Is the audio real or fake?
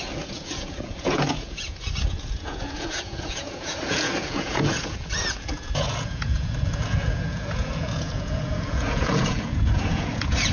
fake